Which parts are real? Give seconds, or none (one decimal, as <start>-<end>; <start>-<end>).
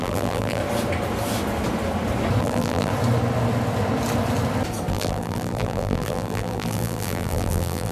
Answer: 0.6-2.4; 2.9-4.9